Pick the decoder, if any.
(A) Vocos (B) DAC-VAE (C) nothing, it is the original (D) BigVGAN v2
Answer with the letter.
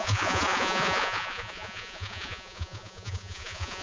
A